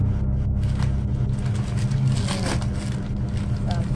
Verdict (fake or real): real